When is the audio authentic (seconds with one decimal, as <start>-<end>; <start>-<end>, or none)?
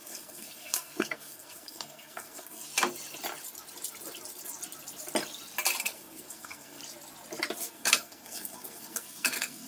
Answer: 2.7-5.8; 6.8-7.6